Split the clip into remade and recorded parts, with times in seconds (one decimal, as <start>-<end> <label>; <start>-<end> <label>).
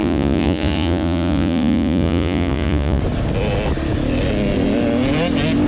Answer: 0.0-3.0 remade; 3.0-5.7 recorded